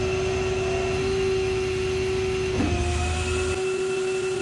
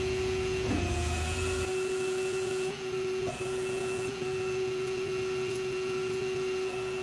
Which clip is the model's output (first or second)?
second